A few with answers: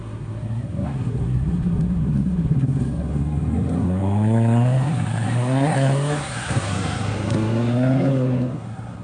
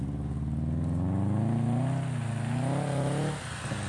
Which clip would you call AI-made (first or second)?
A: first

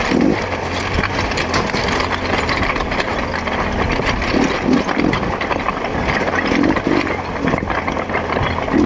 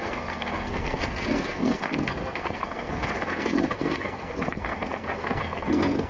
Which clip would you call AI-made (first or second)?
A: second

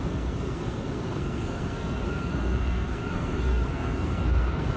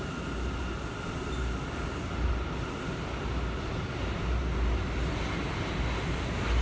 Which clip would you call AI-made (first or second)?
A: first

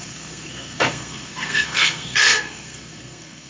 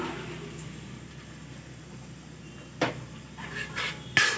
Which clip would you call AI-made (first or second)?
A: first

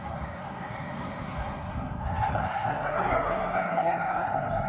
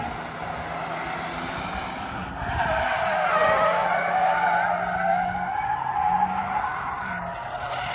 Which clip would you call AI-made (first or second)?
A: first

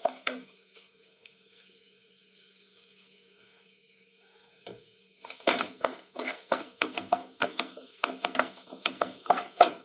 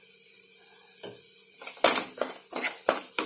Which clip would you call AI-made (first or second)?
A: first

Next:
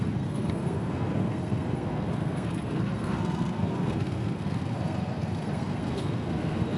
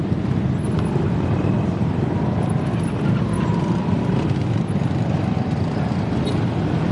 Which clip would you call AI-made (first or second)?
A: first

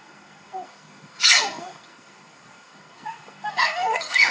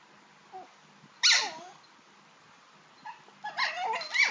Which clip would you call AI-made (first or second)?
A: first